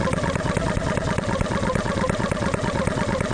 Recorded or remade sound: recorded